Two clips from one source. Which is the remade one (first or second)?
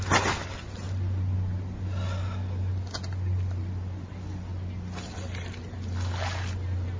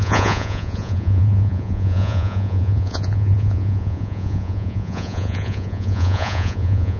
second